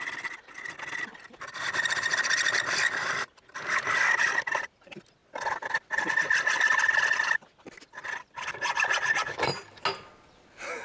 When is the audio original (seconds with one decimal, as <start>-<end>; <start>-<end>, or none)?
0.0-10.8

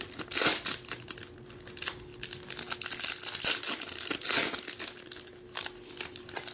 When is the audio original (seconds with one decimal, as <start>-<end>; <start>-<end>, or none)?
0.0-6.5

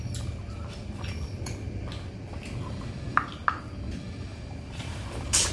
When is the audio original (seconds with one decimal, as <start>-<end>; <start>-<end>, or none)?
0.0-4.3

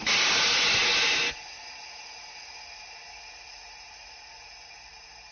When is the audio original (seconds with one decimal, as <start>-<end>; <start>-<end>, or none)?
0.0-5.3